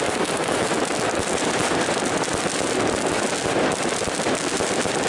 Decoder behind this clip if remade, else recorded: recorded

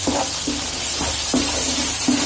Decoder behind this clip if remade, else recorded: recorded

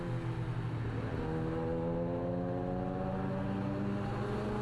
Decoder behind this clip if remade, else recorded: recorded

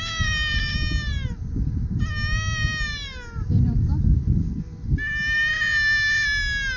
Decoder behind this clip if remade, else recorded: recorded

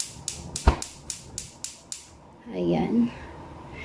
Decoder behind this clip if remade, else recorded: recorded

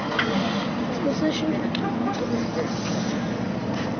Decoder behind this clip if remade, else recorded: recorded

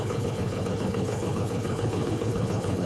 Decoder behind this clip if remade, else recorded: remade, codec, HILCodec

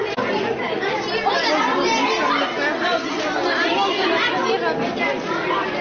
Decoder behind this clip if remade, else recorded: recorded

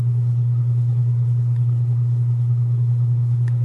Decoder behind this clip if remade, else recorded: remade, codec, HILCodec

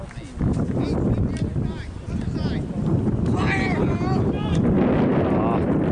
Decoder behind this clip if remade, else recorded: recorded